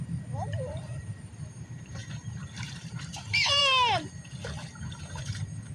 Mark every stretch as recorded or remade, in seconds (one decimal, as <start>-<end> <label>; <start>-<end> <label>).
0.0-3.6 remade; 3.6-4.8 recorded; 4.8-5.7 remade